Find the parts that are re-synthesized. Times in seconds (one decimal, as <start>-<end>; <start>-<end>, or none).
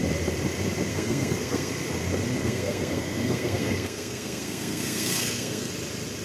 0.9-1.7; 2.4-5.7